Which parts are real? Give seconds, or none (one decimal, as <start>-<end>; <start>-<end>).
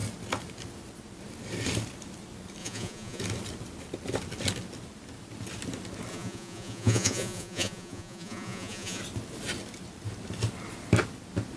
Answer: 0.0-2.6; 3.2-6.1; 9.0-11.6